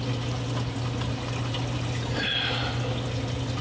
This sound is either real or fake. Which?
real